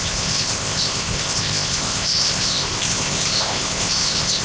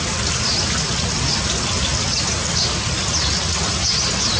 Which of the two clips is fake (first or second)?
first